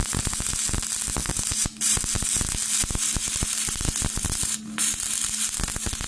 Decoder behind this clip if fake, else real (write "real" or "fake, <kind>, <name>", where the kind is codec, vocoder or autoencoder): real